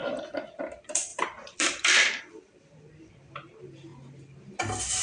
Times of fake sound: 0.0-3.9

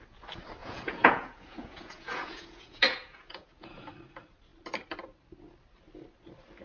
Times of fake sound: 0.6-3.9

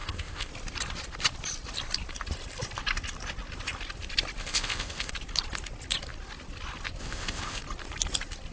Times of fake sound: 0.0-0.5; 4.4-5.1; 7.0-7.6